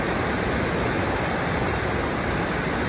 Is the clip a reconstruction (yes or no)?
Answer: no